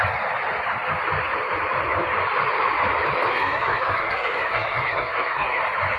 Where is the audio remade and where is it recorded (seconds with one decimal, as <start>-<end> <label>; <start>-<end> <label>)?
0.0-3.3 recorded; 3.3-5.6 remade; 5.6-6.0 recorded